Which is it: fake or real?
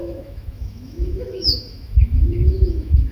fake